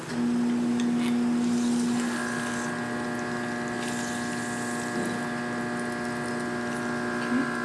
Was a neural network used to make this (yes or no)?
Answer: no